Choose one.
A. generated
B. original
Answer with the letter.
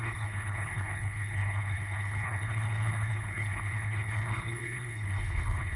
A